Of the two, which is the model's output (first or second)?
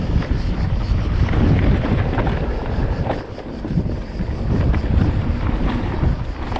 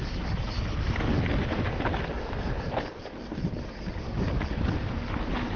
first